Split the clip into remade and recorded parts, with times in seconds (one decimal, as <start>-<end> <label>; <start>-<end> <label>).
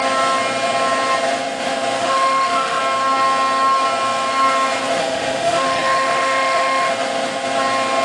0.0-2.0 recorded; 2.0-2.8 remade; 2.8-5.0 recorded; 5.0-6.9 remade; 6.9-8.0 recorded